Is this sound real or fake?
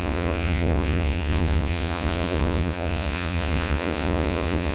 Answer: fake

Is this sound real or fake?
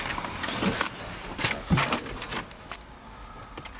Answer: real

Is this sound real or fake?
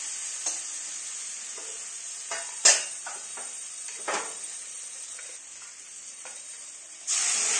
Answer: real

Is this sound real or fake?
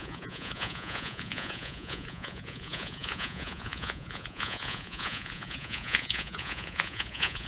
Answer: fake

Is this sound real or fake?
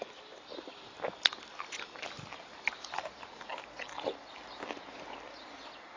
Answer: real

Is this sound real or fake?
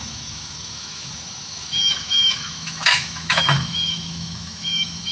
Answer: fake